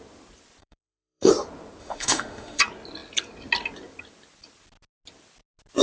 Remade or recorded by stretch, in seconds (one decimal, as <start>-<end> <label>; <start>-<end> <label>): 0.0-0.6 recorded; 0.6-1.3 remade; 1.3-1.8 recorded; 1.8-2.6 remade; 2.6-5.8 recorded